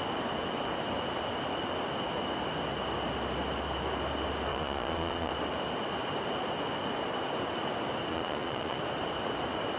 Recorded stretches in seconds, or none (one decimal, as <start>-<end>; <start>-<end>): 0.0-4.5; 5.3-8.1; 8.8-9.8